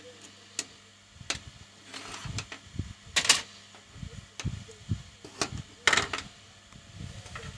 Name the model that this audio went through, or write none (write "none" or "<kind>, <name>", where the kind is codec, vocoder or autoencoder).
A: none